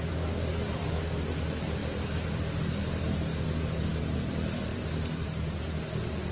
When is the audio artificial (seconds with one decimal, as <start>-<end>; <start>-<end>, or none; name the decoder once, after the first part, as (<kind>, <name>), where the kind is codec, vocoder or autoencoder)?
none